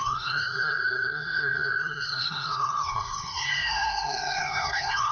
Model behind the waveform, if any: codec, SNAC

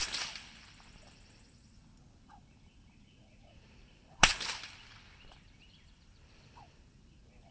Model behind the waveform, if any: vocoder, BigVGAN v2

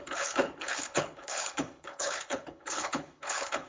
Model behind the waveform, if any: codec, HILCodec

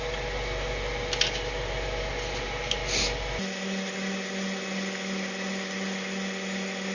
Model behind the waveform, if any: none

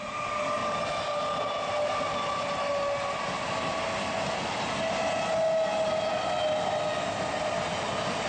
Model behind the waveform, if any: none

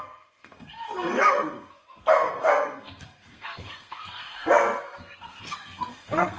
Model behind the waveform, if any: codec, SNAC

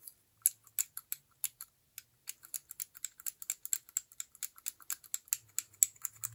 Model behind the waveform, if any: none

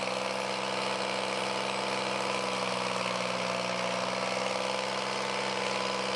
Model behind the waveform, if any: none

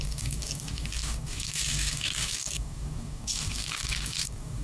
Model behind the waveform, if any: codec, DAC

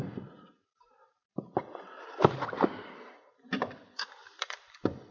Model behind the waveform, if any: vocoder, BigVGAN v2